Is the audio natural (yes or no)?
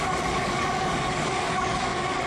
no